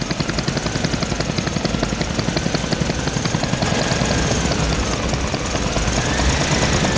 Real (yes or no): yes